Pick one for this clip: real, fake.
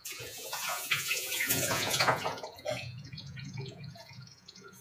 fake